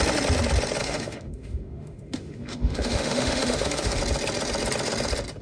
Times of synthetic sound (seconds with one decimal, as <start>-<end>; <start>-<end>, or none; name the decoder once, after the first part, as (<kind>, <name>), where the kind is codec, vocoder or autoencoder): 0.8-4.0 (autoencoder, DAC-VAE)